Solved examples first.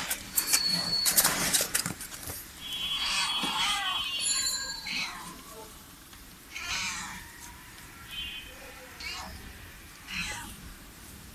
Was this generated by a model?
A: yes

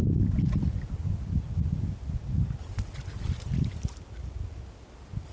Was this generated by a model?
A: no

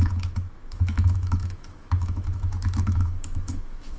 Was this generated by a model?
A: yes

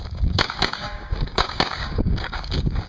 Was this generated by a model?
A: yes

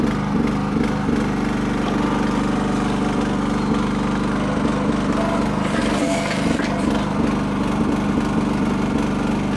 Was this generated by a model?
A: no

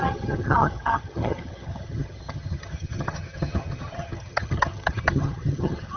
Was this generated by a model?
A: yes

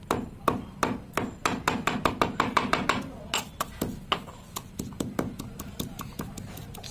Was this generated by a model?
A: no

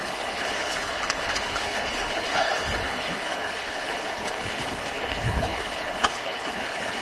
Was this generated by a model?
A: yes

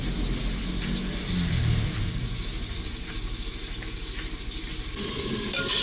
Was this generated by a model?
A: no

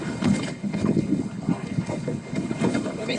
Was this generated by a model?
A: yes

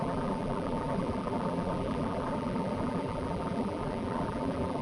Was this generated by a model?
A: yes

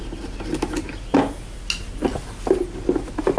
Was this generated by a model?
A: no